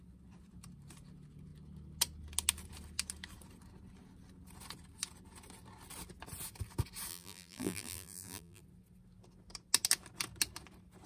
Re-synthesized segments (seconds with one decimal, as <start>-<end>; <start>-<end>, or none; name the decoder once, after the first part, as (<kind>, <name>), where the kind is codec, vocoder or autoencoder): 7.1-8.6 (vocoder, BigVGAN v2)